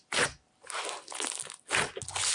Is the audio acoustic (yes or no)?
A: yes